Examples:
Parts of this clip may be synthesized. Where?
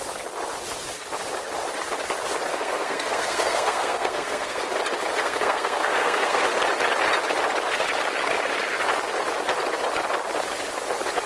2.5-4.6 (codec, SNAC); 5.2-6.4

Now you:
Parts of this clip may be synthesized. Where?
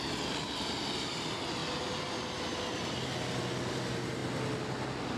none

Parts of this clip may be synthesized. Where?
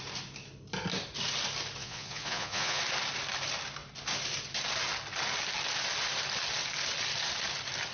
1.8-2.8 (vocoder, Vocos)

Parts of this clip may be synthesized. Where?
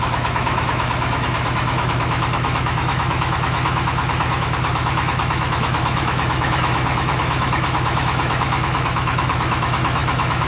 0.0-10.5 (autoencoder, DAC-VAE)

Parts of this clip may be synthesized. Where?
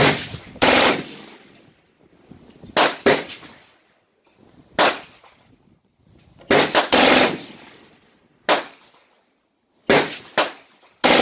0.0-2.3 (vocoder, BigVGAN v2)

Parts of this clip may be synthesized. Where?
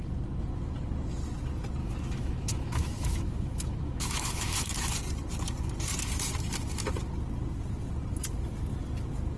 1.8-4.9 (autoencoder, DAC-VAE)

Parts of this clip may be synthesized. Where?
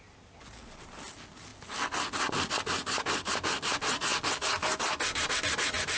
none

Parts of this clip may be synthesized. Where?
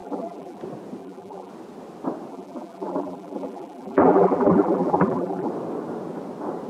0.0-0.6 (vocoder, BigVGAN v2); 1.0-1.5; 2.3-5.5